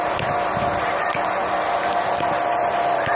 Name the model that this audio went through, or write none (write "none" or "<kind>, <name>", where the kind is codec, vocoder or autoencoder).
none